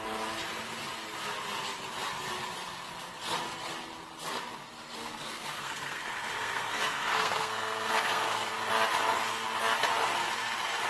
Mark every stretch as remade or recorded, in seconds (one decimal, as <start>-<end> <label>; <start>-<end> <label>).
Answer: 0.0-5.0 recorded; 5.0-8.5 remade; 8.5-10.9 recorded